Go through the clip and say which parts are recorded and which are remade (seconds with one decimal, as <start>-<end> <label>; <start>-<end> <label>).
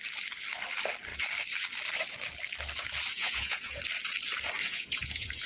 0.0-3.1 recorded; 3.1-3.8 remade; 3.8-4.6 recorded; 4.6-5.5 remade